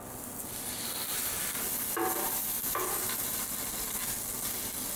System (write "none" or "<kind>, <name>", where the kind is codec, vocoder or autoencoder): none